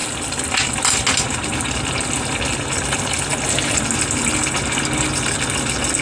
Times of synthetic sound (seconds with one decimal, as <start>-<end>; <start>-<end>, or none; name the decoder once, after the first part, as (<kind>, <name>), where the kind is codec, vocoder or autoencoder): none